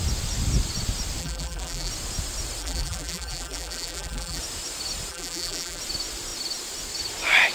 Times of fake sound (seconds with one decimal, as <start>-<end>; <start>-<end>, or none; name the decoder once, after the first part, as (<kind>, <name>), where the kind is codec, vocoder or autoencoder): 1.2-1.9 (vocoder, BigVGAN v2); 2.6-4.4; 5.1-5.8